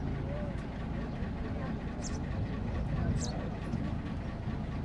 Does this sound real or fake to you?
real